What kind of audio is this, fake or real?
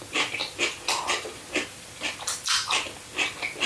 real